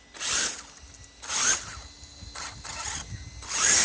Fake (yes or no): no